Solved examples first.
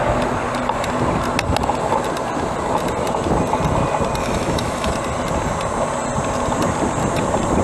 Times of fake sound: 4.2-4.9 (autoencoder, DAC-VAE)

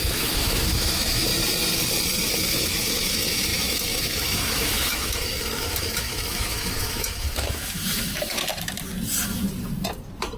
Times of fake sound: 0.0-1.3 (autoencoder, DAC-VAE); 2.4-8.5

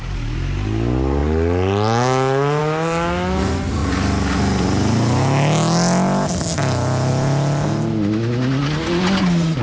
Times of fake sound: none

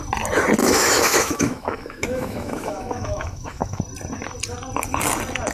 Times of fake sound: 0.6-3.8 (autoencoder, DAC-VAE)

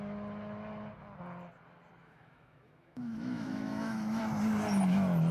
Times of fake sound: 2.0-4.2 (autoencoder, DAC-VAE)

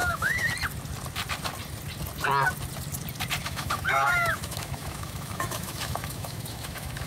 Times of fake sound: 0.0-0.5 (autoencoder, DAC-VAE); 3.4-7.1

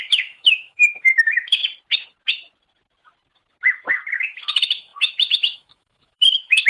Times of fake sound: 0.0-1.6 (autoencoder, DAC-VAE); 4.1-6.7

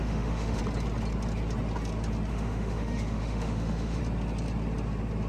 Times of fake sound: 0.0-0.6 (autoencoder, DAC-VAE); 2.3-4.0